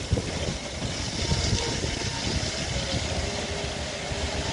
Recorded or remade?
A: recorded